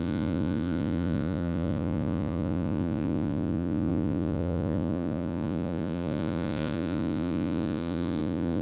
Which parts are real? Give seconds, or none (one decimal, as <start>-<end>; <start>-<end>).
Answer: none